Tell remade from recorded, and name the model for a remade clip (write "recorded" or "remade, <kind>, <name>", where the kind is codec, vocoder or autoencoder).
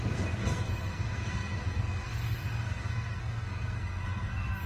remade, codec, SNAC